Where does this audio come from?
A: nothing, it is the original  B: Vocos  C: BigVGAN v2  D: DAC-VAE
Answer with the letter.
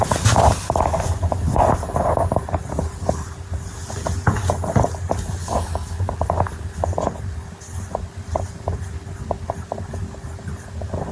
A